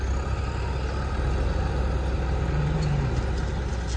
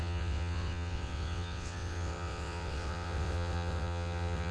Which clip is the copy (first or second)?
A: second